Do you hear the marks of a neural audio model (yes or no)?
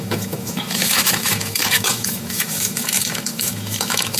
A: yes